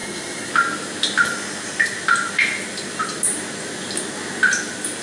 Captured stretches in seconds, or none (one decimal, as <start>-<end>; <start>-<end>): 0.5-5.0

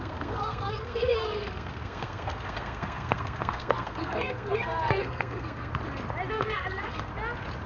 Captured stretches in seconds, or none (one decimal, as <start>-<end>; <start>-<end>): 5.7-6.3; 7.1-7.7

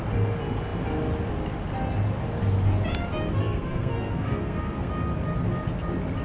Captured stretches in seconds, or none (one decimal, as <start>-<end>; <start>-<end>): 0.0-3.4; 4.9-6.2

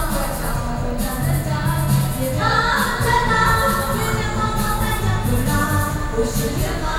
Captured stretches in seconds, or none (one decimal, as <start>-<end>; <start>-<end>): 0.0-7.0

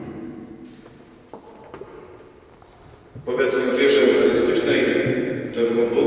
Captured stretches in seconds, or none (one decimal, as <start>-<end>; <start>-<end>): 0.0-6.1

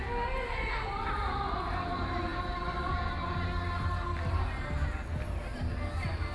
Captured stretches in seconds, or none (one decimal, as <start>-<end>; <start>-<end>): 0.0-6.3